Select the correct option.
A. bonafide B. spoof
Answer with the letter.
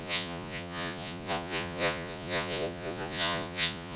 B